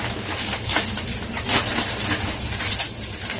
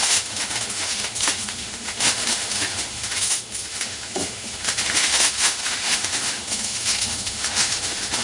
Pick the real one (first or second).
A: first